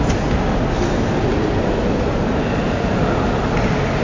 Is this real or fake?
real